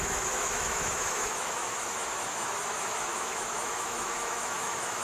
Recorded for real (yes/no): no